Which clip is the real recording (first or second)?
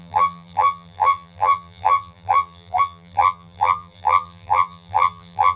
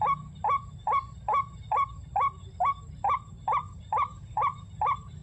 second